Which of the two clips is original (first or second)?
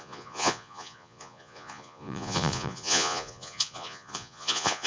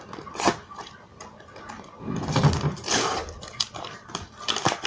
second